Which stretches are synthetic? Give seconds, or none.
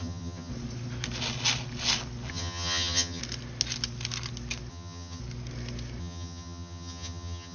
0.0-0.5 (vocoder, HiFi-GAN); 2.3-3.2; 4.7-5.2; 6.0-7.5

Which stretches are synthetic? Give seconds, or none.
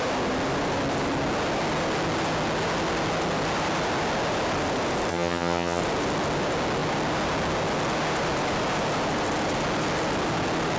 5.1-5.8 (vocoder, HiFi-GAN)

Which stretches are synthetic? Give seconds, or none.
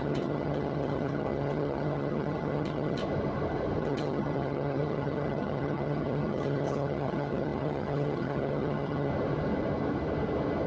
0.0-3.0 (vocoder, HiFi-GAN); 3.8-9.1